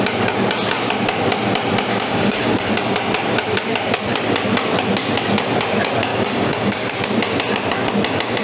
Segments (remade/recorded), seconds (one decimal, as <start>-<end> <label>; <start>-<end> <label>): 0.0-1.9 recorded; 1.9-2.7 remade; 2.7-6.1 recorded; 6.1-6.9 remade; 6.9-8.4 recorded